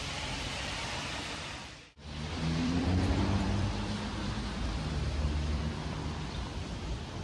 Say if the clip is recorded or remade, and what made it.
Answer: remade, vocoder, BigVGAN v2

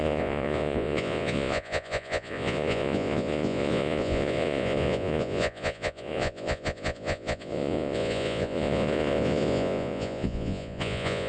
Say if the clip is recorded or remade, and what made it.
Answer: remade, vocoder, Vocos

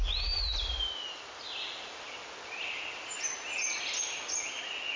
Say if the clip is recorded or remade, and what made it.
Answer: recorded